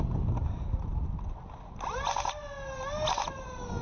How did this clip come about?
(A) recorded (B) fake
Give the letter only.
A